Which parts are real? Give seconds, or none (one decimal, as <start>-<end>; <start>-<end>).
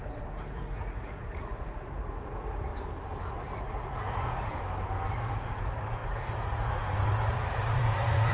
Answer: 2.7-3.3; 4.5-5.1